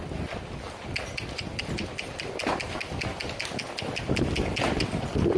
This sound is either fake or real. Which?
real